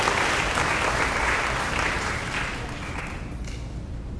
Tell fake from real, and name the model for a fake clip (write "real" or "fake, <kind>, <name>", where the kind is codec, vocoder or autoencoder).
real